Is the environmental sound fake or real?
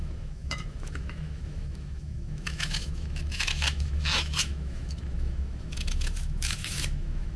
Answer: fake